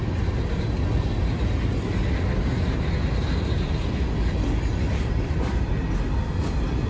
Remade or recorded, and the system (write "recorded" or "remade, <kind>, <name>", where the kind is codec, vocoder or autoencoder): recorded